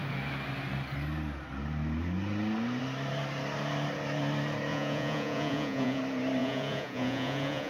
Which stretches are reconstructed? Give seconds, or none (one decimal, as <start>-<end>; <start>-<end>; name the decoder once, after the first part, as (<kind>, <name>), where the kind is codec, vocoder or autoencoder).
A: 4.7-6.0 (vocoder, Vocos); 6.4-7.7